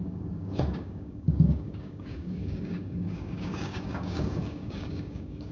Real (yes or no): no